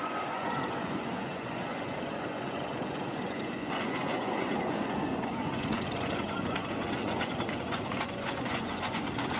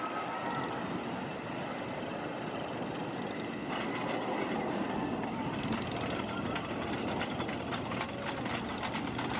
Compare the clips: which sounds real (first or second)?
second